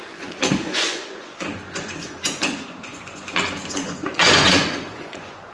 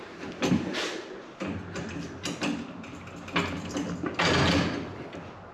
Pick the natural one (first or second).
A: second